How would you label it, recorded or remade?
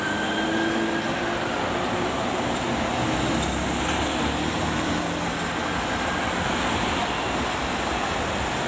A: recorded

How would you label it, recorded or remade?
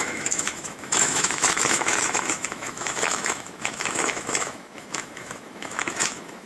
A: remade